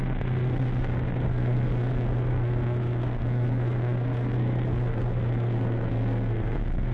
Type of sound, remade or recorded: remade